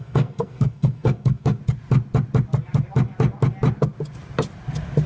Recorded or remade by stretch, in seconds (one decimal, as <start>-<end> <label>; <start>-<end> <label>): 0.0-1.6 remade; 1.6-5.1 recorded